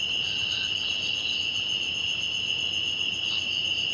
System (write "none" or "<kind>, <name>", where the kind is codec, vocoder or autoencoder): none